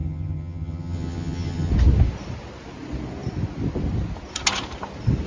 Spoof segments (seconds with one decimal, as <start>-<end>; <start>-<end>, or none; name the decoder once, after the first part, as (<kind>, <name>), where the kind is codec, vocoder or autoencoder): 0.0-1.7 (vocoder, HiFi-GAN)